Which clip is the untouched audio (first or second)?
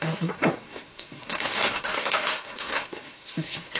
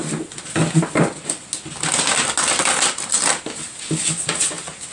second